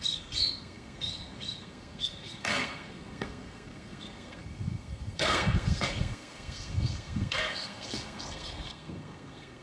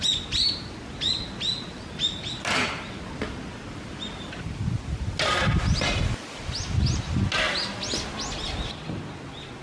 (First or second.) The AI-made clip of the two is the first